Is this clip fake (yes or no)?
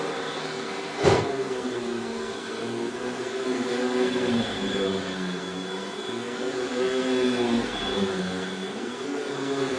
yes